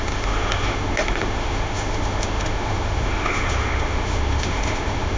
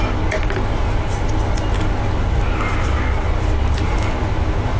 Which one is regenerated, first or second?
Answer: first